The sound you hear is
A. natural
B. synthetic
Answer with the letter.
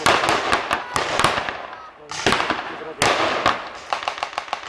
A